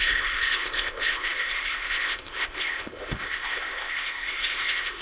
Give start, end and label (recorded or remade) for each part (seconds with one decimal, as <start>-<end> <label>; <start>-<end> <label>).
0.0-5.0 remade